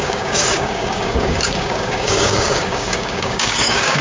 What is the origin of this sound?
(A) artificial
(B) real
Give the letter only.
A